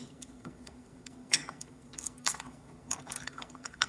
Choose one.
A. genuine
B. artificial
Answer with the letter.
B